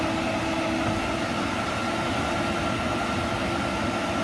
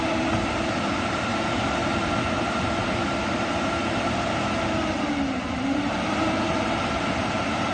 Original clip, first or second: first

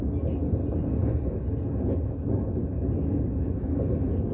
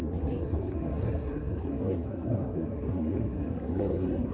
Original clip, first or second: first